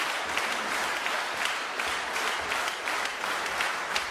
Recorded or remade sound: recorded